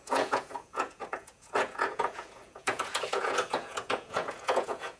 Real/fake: fake